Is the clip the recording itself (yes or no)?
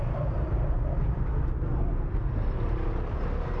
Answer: yes